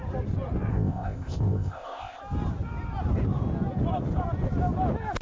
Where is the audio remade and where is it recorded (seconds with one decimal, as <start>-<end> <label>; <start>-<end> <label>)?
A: 0.0-0.7 recorded; 0.7-2.2 remade; 2.2-5.2 recorded